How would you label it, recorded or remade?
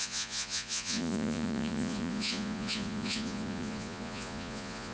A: remade